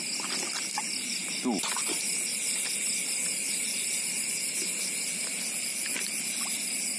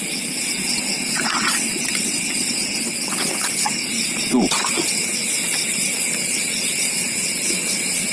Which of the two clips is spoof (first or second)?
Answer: second